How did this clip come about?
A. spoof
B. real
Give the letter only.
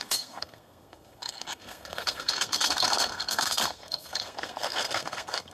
A